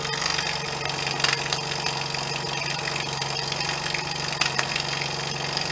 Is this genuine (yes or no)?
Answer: yes